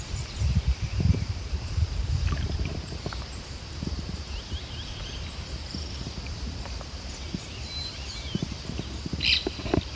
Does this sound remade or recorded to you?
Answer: remade